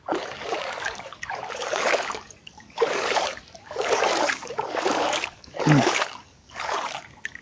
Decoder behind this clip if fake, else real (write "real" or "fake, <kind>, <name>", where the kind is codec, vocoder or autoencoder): fake, codec, DAC